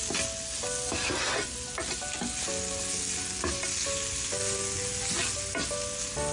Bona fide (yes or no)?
yes